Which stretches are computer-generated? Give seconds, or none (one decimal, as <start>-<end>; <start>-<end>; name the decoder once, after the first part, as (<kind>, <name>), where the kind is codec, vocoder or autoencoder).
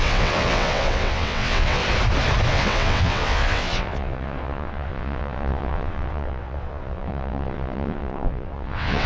0.0-1.8 (vocoder, WaveNeXt); 2.5-9.1